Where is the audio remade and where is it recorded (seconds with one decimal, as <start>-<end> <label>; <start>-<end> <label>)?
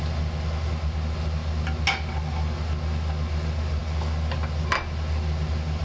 0.0-5.8 recorded